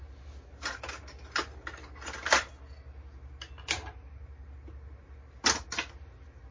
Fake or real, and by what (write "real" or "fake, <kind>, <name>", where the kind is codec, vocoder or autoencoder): real